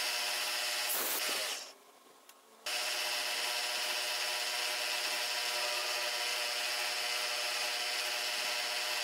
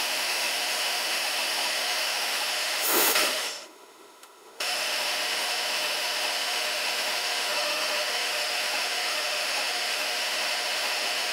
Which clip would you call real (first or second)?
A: first